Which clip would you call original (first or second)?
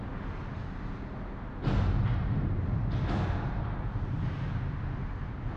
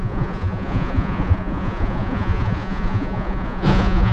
first